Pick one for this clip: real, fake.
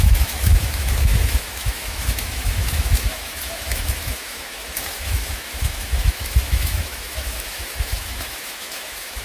fake